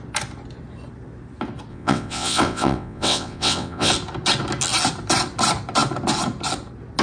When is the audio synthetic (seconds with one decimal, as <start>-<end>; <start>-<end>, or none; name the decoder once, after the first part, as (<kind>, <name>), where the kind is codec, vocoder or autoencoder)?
1.7-3.9 (vocoder, WaveNeXt)